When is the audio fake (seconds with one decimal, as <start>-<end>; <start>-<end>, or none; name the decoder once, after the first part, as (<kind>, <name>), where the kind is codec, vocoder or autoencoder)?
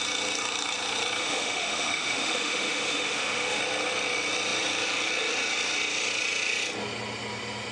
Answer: 1.2-3.6 (autoencoder, DAC-VAE)